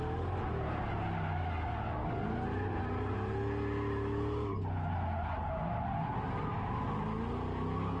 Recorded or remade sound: recorded